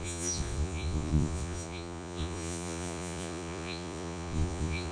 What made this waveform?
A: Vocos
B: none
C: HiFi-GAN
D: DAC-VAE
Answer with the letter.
A